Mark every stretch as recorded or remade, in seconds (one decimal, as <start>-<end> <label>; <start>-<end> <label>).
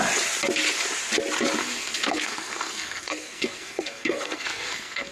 0.0-1.6 recorded; 1.6-5.1 remade